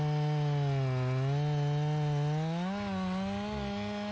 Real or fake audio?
real